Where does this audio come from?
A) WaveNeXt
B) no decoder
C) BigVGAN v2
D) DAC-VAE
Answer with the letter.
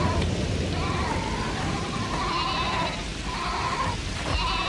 C